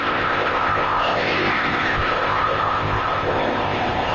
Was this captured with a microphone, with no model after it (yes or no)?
no